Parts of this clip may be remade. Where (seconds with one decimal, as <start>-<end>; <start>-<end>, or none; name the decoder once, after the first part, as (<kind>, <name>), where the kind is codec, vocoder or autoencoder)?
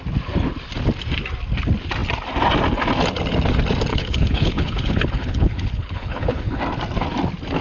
3.9-6.6 (codec, HILCodec)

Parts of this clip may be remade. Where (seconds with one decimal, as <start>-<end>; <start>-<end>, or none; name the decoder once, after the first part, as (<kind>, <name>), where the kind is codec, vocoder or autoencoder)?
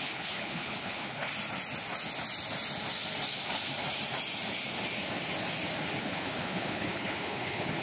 0.0-1.3 (codec, HILCodec); 6.0-7.8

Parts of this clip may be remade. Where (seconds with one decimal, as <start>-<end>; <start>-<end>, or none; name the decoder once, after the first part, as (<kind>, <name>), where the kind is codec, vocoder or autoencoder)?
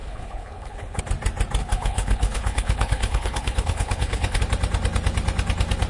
0.0-1.0 (codec, HILCodec); 1.6-4.4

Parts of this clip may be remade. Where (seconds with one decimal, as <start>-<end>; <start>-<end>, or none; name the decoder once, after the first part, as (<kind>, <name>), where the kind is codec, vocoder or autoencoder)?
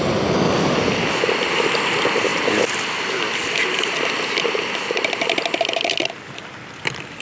none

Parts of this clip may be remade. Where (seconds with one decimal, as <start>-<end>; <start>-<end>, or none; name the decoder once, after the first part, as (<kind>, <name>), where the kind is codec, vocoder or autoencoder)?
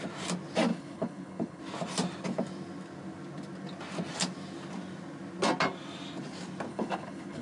0.7-1.6 (codec, HILCodec); 6.7-7.4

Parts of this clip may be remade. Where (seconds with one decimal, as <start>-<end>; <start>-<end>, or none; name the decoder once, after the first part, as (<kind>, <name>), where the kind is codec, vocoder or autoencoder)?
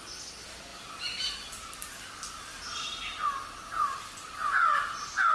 none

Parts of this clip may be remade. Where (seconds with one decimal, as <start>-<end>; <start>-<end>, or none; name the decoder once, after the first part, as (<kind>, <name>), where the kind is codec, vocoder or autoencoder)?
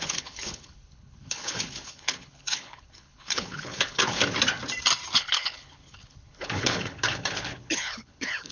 0.0-4.2 (codec, HILCodec); 5.2-8.5